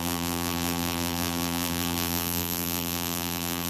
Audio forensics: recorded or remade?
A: remade